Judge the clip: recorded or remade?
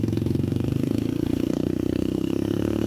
remade